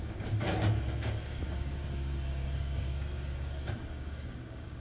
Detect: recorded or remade remade